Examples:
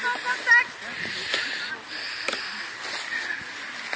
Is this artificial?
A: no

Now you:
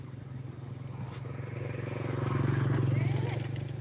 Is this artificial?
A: no